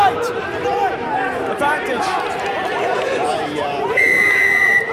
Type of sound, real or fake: fake